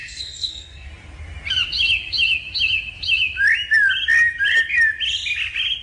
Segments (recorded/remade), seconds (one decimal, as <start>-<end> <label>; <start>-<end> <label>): 0.0-0.9 remade; 0.9-5.8 recorded